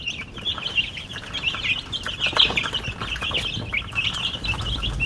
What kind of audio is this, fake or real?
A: real